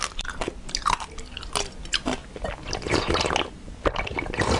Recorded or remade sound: recorded